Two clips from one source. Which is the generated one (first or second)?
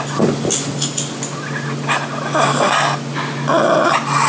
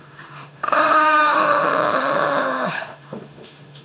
second